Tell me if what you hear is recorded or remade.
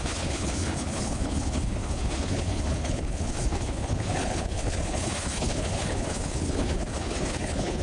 remade